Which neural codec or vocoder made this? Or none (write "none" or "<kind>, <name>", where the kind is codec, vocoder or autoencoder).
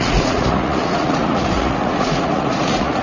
vocoder, Vocos